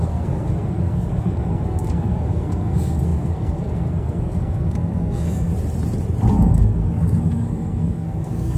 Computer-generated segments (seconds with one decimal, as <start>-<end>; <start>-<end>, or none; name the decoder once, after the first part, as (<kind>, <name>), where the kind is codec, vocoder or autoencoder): 0.0-5.5 (codec, SNAC); 6.3-8.6